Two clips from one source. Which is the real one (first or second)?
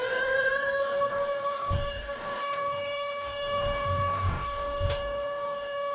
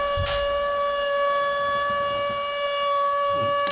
second